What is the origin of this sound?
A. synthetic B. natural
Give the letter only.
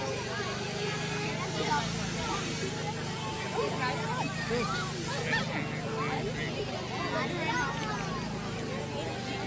B